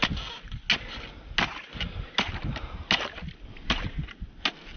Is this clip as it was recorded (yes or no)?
yes